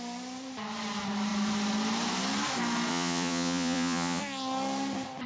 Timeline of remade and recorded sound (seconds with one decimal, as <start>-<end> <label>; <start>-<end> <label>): 0.0-2.9 recorded; 2.9-4.2 remade; 4.2-5.3 recorded